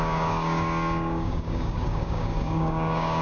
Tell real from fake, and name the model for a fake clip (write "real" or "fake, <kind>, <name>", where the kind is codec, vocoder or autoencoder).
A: fake, codec, DAC